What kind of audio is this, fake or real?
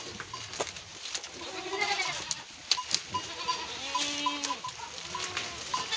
real